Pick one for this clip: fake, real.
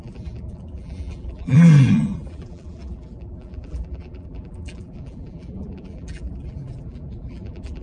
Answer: fake